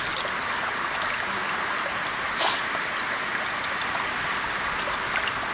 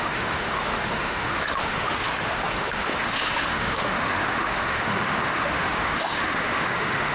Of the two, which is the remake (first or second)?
second